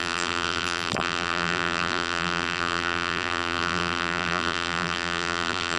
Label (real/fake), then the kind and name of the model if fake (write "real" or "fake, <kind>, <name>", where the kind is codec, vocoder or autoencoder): fake, vocoder, BigVGAN v2